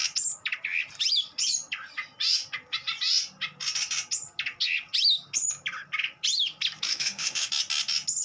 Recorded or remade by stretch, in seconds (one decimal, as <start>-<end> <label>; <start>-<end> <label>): 0.0-6.9 recorded; 6.9-7.5 remade; 7.5-8.2 recorded